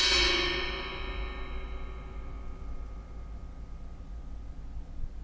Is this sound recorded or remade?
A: recorded